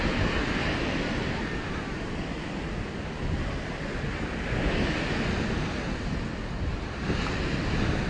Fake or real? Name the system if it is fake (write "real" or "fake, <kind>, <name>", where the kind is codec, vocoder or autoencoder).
real